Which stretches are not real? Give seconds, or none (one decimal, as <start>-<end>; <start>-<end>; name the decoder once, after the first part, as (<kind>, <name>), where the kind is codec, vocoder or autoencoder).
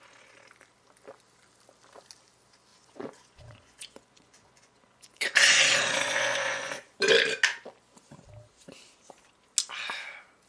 2.7-7.1 (vocoder, Vocos)